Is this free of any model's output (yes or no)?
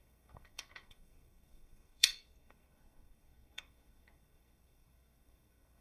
no